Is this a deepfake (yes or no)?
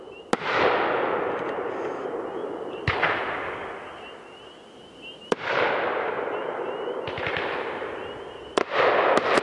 no